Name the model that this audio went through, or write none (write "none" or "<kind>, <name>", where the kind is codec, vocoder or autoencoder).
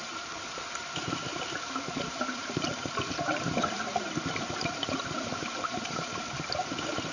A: vocoder, BigVGAN v2